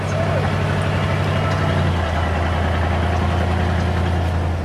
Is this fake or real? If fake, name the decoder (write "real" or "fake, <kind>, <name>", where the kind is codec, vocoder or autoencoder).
real